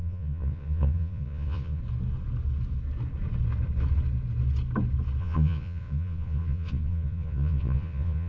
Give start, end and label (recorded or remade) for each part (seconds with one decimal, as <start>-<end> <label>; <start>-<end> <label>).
0.0-1.8 remade; 1.8-5.2 recorded; 5.2-8.3 remade